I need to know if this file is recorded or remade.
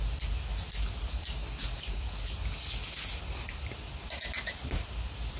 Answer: recorded